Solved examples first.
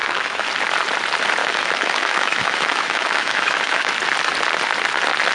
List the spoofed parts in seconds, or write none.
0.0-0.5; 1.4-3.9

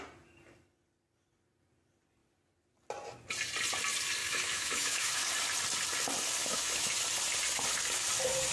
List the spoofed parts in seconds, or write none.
4.2-5.3; 6.4-6.9